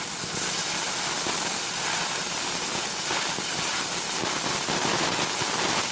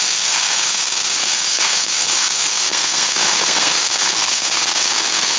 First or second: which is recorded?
first